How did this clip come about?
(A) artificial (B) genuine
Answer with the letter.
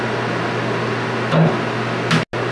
B